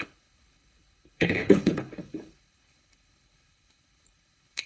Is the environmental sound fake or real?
fake